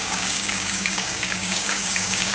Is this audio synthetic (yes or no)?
yes